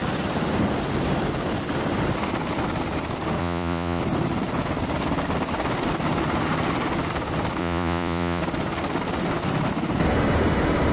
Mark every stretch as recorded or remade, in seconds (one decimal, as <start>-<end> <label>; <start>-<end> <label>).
0.0-3.4 recorded; 3.4-4.0 remade; 4.0-7.6 recorded; 7.6-8.4 remade; 8.4-10.9 recorded